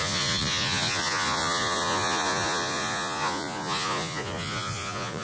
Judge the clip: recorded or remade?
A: remade